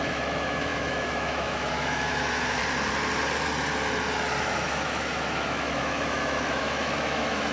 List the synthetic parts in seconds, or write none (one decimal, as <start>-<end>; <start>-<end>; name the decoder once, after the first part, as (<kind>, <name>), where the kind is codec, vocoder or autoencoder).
0.0-2.6 (autoencoder, DAC-VAE); 4.4-7.5